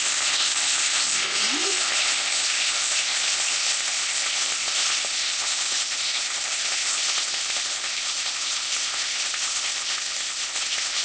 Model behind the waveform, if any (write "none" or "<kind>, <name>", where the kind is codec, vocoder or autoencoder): codec, ZipCodec